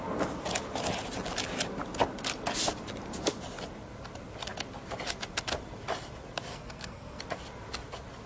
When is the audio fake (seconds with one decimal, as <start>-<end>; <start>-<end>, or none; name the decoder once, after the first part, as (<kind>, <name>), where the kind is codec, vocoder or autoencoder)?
6.5-7.2 (codec, SNAC)